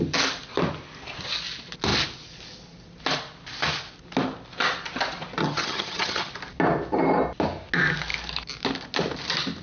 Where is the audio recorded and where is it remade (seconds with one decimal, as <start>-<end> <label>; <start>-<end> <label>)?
0.0-5.4 recorded; 5.4-6.3 remade; 6.3-9.6 recorded